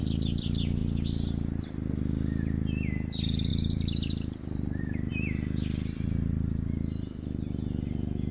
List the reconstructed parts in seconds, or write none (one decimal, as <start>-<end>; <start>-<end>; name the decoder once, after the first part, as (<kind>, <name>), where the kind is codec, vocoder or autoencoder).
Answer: 3.5-5.1 (vocoder, BigVGAN v2)